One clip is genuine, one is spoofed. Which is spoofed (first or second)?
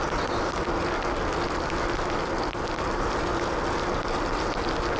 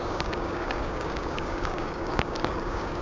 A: second